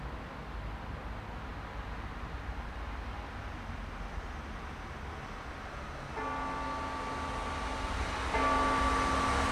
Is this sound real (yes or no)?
yes